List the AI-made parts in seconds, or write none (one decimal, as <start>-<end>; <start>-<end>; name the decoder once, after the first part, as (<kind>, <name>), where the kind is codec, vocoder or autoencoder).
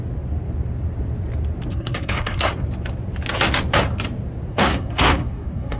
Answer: 1.7-2.5 (codec, SNAC); 4.5-5.8